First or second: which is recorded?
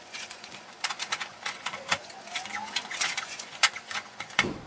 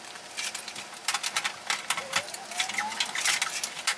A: second